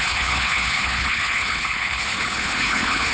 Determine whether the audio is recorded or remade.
remade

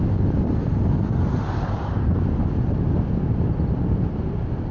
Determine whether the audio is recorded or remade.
recorded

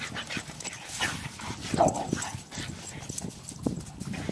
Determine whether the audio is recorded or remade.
recorded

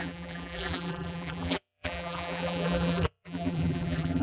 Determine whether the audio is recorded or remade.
remade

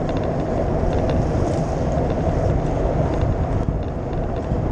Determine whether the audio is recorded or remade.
recorded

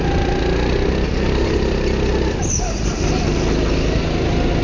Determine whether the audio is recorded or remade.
recorded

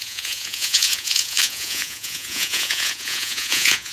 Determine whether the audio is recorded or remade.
remade